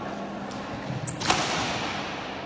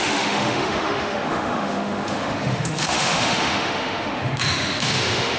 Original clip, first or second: first